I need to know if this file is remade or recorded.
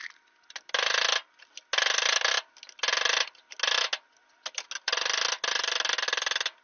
recorded